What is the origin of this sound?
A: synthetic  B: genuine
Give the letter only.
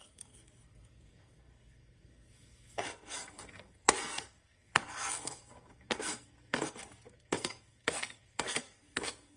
A